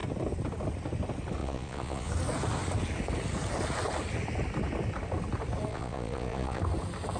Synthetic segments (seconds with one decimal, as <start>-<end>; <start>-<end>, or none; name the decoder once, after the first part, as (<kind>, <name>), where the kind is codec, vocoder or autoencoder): 1.4-2.1 (vocoder, Vocos); 5.7-6.6